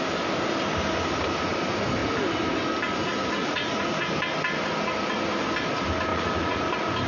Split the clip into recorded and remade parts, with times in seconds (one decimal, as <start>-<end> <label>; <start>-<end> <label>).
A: 0.0-3.4 recorded; 3.4-4.1 remade; 4.1-6.1 recorded; 6.1-6.6 remade; 6.6-7.1 recorded